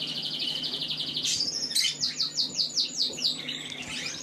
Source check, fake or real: real